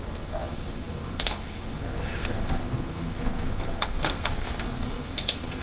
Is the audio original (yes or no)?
no